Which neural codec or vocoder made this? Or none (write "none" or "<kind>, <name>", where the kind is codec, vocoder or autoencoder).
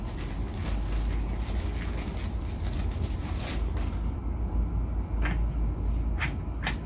none